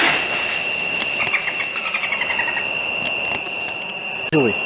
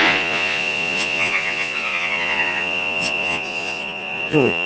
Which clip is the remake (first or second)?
second